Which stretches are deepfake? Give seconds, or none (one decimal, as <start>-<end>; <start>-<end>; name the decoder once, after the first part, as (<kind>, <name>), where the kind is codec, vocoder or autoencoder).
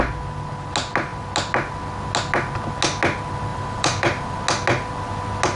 3.5-4.4 (vocoder, BigVGAN v2)